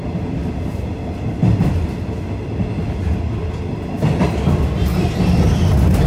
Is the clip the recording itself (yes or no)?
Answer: yes